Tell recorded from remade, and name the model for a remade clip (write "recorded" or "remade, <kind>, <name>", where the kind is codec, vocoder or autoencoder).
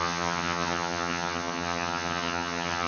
remade, vocoder, HiFi-GAN